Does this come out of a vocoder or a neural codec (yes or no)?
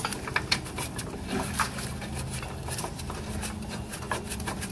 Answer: no